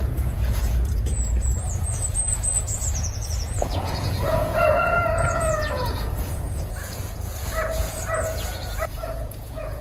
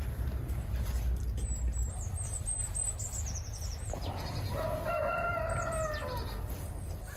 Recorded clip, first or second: second